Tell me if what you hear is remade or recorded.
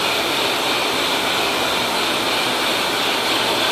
recorded